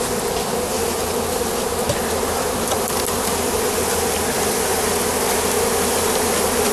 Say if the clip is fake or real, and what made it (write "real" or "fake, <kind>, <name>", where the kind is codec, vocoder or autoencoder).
real